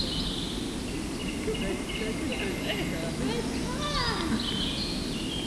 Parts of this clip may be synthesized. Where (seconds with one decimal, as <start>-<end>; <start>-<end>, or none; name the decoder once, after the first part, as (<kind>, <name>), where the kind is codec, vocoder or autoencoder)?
none